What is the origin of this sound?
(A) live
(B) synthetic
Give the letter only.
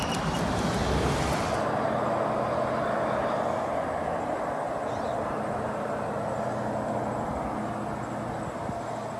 A